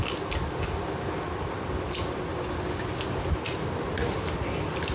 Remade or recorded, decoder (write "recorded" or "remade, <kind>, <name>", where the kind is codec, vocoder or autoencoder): recorded